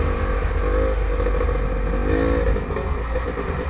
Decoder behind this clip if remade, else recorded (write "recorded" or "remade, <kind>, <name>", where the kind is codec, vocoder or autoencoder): recorded